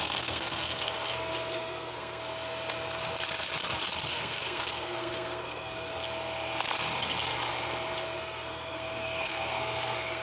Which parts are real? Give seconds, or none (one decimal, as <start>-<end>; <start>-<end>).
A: 2.2-4.1; 5.9-8.2